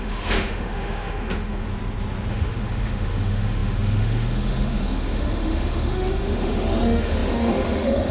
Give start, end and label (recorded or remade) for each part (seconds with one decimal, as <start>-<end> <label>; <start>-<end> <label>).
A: 0.0-1.7 remade; 1.7-2.3 recorded; 2.3-8.1 remade

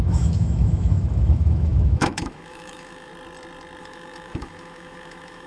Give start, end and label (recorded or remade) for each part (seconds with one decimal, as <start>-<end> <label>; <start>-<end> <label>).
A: 0.0-3.1 remade; 3.1-3.8 recorded; 3.8-5.5 remade